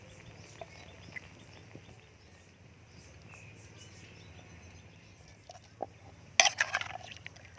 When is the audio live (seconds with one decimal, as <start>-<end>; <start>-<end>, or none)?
0.0-7.6